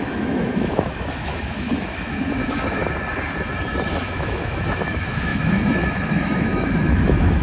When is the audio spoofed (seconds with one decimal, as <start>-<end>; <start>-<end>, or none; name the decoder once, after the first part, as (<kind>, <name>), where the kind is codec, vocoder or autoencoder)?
0.0-2.8 (autoencoder, DAC-VAE); 3.9-7.4